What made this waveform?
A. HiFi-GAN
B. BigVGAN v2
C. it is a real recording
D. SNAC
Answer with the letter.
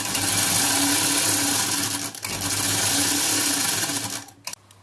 C